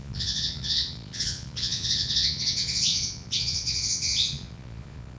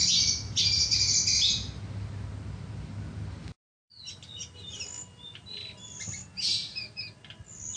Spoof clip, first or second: first